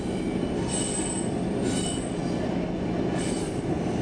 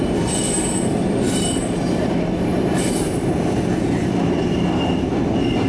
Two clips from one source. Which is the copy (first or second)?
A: second